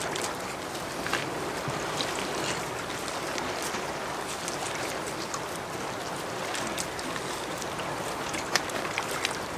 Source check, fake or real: real